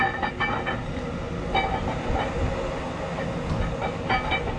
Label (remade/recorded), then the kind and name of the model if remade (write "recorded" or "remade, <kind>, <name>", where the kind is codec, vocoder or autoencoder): recorded